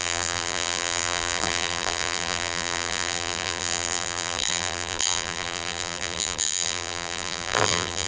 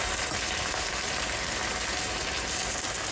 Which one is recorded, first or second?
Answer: second